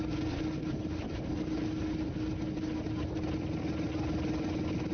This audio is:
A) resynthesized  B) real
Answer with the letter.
B